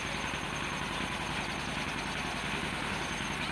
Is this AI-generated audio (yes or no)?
no